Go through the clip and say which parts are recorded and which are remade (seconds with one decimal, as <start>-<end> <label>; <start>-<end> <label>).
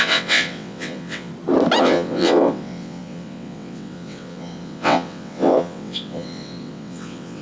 0.0-1.3 remade; 1.3-1.8 recorded; 1.8-7.4 remade